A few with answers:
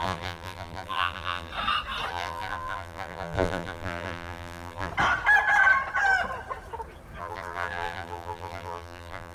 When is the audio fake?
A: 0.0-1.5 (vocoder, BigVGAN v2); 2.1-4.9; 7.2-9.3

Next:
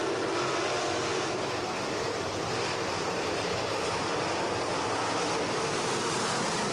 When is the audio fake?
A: 1.1-4.7 (vocoder, BigVGAN v2)

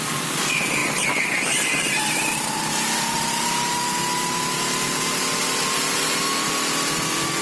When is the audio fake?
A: none

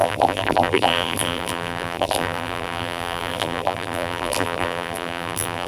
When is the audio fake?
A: 0.0-5.7 (vocoder, BigVGAN v2)

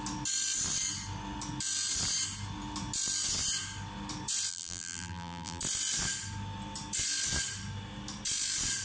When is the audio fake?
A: 4.5-5.6 (vocoder, BigVGAN v2)

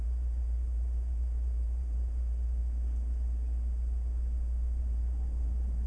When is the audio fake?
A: 0.0-2.6 (vocoder, BigVGAN v2); 4.8-5.9

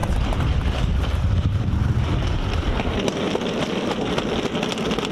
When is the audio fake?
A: 0.0-2.0 (vocoder, BigVGAN v2)

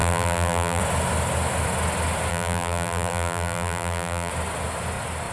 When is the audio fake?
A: 0.0-0.8 (vocoder, BigVGAN v2); 2.3-4.3